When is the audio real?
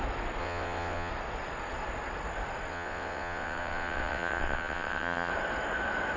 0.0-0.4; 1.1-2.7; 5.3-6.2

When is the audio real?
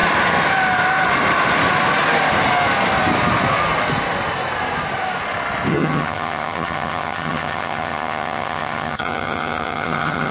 0.0-5.7